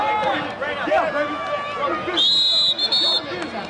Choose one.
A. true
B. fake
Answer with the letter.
A